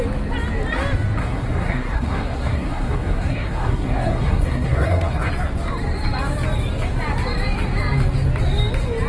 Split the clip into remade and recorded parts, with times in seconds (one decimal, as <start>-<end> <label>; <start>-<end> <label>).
0.0-1.2 recorded; 1.2-5.3 remade; 5.3-9.1 recorded